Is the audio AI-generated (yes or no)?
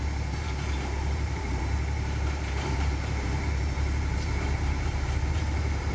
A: yes